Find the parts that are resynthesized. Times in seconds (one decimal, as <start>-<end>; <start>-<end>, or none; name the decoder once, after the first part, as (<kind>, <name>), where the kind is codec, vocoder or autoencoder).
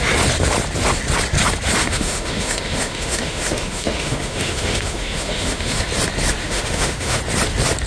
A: 1.8-5.9 (autoencoder, DAC-VAE); 6.4-7.2